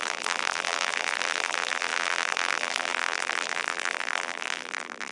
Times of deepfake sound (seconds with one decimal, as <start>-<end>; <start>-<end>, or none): 0.0-5.1